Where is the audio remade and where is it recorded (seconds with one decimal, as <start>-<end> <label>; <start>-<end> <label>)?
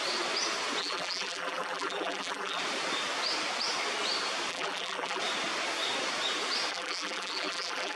0.0-0.8 recorded; 0.8-2.6 remade; 2.6-4.5 recorded; 4.5-5.2 remade; 5.2-6.7 recorded; 6.7-8.0 remade